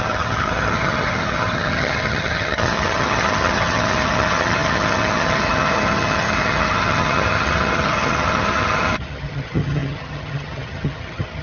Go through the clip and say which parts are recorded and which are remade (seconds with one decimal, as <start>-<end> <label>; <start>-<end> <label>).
0.0-11.4 remade